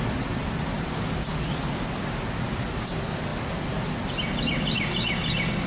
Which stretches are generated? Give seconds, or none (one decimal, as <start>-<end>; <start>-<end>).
none